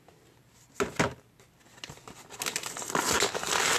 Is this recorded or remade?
recorded